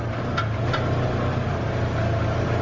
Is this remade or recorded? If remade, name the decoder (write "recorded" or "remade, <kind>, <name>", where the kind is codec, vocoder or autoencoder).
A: recorded